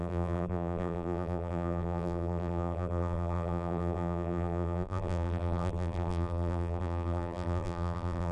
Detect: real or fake fake